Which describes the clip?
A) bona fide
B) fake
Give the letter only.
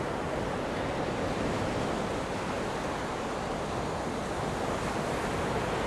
A